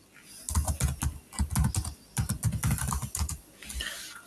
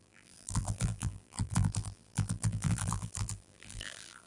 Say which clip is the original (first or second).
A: first